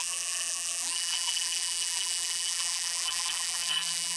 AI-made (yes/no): yes